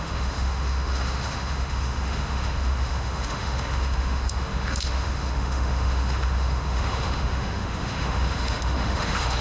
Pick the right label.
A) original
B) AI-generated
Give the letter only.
B